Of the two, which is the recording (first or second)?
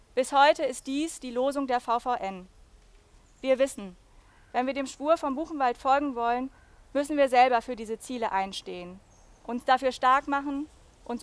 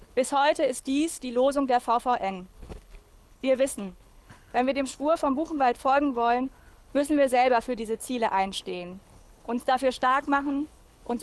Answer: first